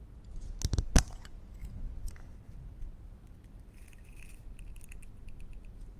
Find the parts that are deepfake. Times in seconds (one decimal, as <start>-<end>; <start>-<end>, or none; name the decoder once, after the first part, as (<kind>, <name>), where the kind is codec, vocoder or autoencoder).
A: none